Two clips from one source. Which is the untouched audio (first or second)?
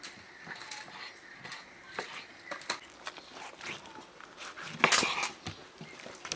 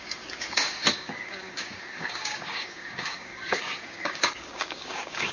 first